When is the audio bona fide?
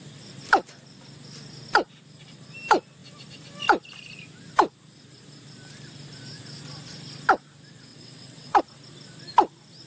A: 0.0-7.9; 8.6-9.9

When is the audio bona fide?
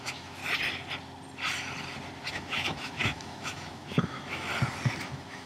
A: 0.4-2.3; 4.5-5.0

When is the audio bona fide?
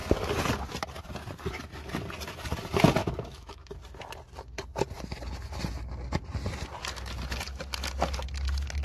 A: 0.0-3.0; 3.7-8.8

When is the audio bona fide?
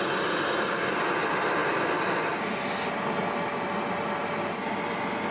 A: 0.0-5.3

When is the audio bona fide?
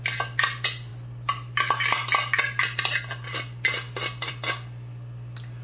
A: 0.0-5.6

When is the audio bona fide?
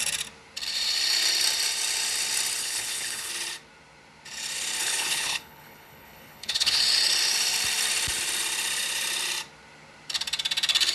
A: 0.0-2.6; 3.3-4.8; 6.8-10.9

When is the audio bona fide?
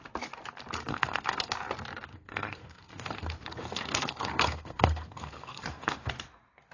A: 0.0-0.9; 1.5-2.1; 6.1-6.7